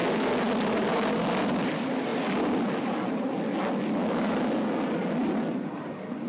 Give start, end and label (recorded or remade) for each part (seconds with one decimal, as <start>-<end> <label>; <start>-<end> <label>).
0.0-6.3 recorded